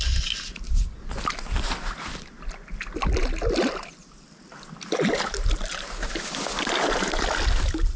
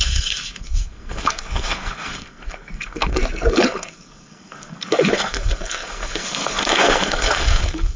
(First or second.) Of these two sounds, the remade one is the second